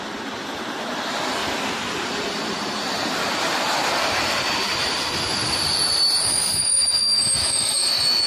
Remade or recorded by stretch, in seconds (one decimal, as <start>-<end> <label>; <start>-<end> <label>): 0.0-6.3 recorded; 6.3-8.3 remade